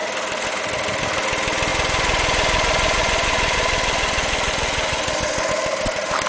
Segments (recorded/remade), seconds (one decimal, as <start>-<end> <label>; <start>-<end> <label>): 0.0-1.7 recorded; 1.7-5.5 remade; 5.5-6.3 recorded